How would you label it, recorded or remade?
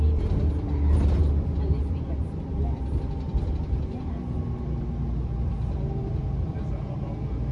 recorded